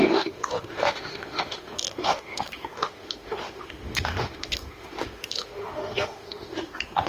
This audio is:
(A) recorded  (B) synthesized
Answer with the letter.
B